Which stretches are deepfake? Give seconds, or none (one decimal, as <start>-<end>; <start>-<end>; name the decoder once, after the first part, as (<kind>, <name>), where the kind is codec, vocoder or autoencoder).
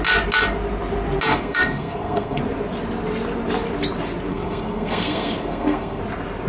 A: 1.3-2.4 (codec, SNAC); 4.3-6.0